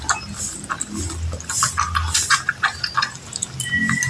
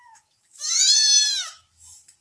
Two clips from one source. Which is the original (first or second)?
first